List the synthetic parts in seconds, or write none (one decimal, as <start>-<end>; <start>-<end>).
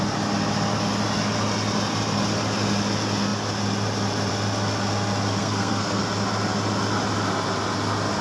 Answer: 5.4-6.0